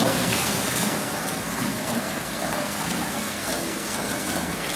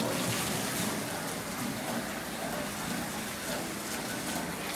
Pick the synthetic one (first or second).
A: first